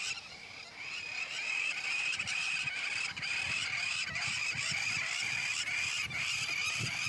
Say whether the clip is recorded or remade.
recorded